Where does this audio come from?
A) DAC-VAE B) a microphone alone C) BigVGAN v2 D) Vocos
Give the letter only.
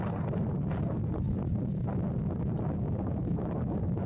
B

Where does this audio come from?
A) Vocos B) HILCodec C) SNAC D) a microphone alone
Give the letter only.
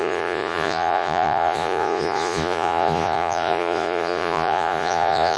A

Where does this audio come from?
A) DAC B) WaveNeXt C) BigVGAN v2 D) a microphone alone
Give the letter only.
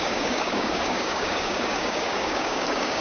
A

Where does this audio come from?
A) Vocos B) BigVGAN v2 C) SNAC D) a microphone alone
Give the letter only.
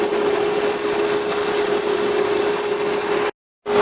D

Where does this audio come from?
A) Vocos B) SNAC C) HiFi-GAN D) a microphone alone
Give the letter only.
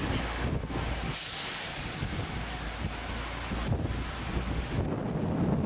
D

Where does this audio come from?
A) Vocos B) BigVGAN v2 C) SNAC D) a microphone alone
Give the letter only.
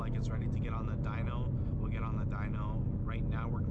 D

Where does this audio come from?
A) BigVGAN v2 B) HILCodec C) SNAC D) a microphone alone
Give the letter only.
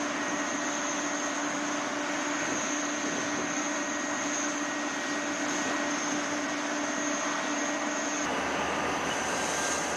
D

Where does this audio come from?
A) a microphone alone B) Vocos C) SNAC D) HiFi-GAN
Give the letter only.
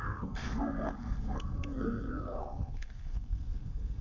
C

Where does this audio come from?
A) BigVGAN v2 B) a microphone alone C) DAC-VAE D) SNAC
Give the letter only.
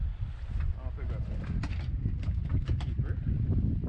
B